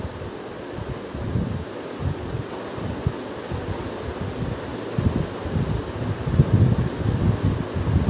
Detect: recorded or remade recorded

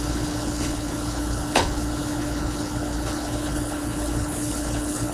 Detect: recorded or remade remade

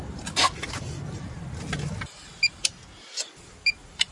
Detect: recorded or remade recorded